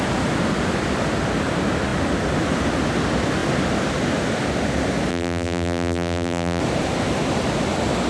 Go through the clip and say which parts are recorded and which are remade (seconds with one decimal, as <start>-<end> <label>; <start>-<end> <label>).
0.0-5.1 recorded; 5.1-6.6 remade; 6.6-8.1 recorded